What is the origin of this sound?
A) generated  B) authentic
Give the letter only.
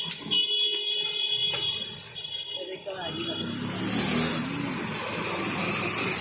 B